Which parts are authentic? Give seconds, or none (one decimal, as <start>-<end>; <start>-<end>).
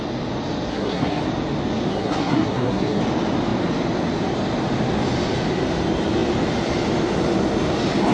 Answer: 0.0-0.7; 1.2-1.9; 3.0-8.1